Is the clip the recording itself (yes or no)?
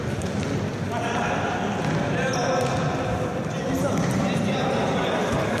yes